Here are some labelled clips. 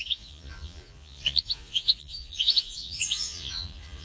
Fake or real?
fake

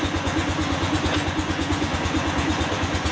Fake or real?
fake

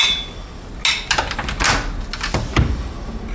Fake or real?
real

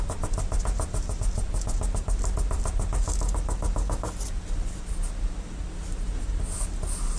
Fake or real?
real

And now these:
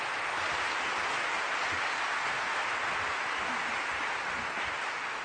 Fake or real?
real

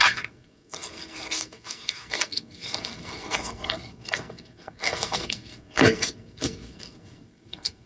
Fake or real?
fake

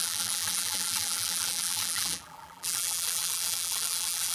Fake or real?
fake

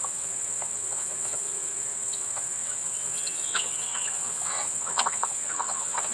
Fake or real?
fake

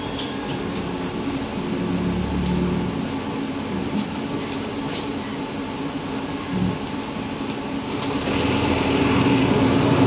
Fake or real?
real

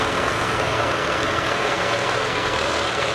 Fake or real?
fake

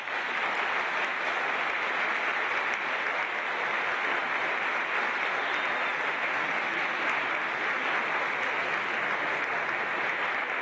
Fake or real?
real